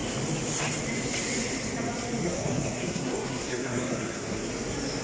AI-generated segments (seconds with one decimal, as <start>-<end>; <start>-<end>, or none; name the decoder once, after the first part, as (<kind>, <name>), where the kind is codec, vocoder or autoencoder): 2.2-4.5 (codec, SNAC)